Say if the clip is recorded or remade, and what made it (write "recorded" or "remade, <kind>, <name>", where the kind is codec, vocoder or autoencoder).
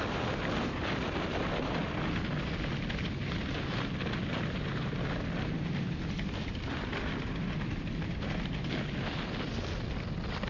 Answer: recorded